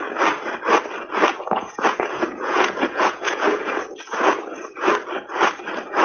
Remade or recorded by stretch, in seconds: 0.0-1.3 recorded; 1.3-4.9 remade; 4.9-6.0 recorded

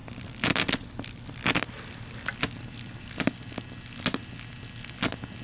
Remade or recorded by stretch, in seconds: 0.0-5.4 recorded

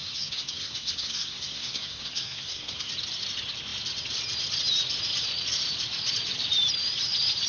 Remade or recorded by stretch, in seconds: 0.0-2.9 remade; 2.9-7.5 recorded

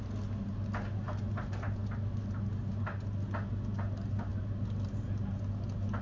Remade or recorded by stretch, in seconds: 0.0-6.0 recorded

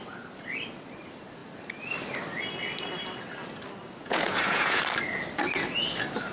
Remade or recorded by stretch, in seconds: 0.0-4.0 recorded; 4.0-4.8 remade; 4.8-6.3 recorded